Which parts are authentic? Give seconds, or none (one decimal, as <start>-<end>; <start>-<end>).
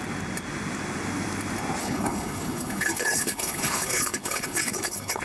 0.0-1.8